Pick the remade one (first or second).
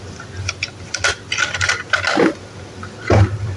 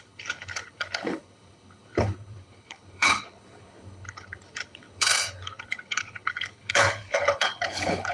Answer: second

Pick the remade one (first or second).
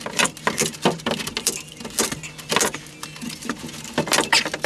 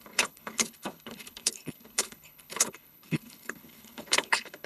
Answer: second